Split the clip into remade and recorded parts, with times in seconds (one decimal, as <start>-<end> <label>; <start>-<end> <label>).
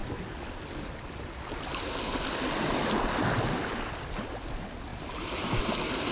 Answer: 0.0-4.9 recorded; 4.9-5.6 remade; 5.6-6.1 recorded